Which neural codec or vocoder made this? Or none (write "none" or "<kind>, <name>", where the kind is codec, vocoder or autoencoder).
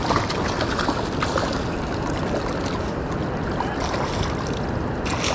none